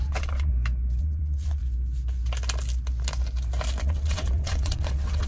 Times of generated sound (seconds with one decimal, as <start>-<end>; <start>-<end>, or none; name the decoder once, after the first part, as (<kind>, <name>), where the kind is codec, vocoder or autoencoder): 0.0-0.5 (vocoder, WaveNeXt); 1.0-1.6; 3.8-5.3